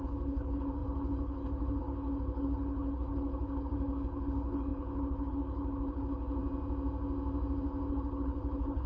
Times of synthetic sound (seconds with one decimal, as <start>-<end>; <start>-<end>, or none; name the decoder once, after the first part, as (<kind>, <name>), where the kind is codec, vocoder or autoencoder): 0.0-6.4 (codec, HILCodec); 7.9-8.9